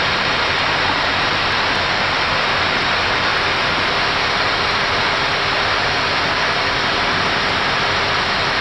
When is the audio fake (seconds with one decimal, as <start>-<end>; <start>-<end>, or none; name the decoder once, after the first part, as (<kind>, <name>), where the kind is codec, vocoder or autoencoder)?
none